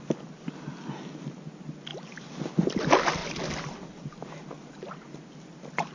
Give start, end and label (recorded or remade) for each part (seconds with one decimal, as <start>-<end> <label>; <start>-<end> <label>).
0.0-5.9 recorded